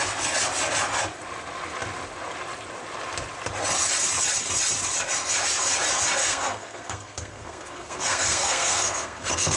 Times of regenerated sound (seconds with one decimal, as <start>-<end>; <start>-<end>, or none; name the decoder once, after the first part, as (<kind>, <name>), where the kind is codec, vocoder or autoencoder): 6.2-9.6 (codec, SNAC)